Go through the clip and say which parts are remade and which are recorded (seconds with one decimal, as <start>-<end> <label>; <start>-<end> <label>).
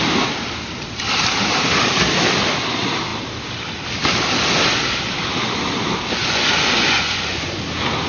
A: 0.0-6.2 recorded; 6.2-7.6 remade; 7.6-8.1 recorded